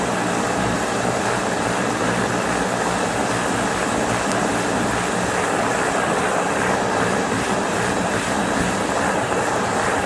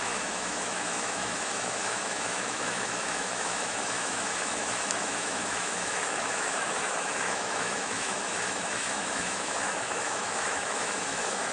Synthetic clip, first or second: second